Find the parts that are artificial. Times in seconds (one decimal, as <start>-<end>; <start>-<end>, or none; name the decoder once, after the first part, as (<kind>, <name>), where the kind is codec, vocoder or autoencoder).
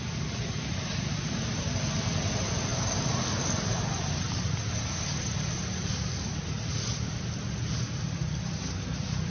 0.0-2.7 (vocoder, BigVGAN v2); 3.2-3.7; 5.5-9.3